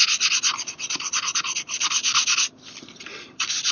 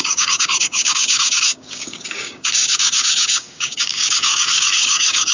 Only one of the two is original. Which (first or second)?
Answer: first